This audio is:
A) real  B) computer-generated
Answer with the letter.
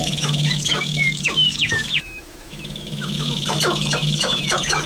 B